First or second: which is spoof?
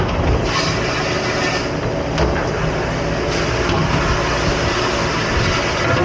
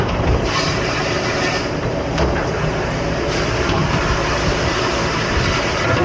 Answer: second